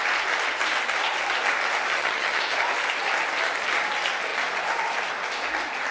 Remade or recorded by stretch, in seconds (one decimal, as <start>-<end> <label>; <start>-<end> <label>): 0.0-1.9 recorded; 1.9-2.4 remade; 2.4-5.9 recorded